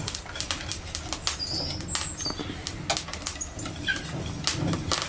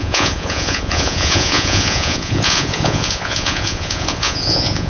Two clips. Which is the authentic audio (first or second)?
first